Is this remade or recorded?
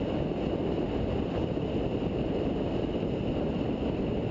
recorded